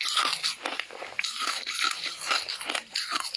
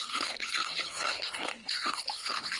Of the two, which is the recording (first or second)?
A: first